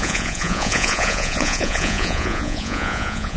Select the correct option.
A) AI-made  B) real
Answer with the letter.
A